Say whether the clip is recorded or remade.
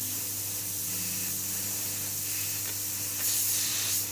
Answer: recorded